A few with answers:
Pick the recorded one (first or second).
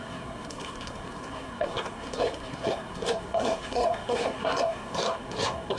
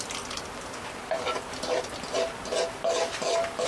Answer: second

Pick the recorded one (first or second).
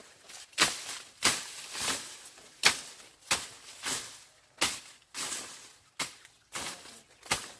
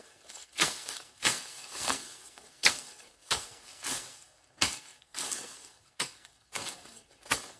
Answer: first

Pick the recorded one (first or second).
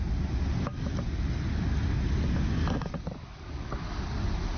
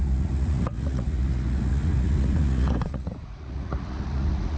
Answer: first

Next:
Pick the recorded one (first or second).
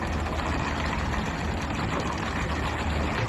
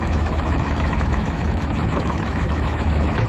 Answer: first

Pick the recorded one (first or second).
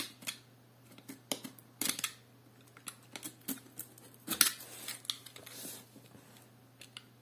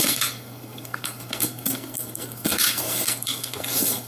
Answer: first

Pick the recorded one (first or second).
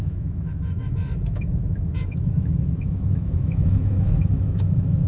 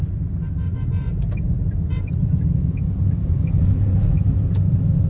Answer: second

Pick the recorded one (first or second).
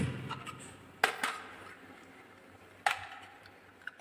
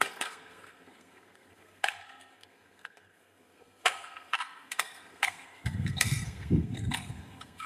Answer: first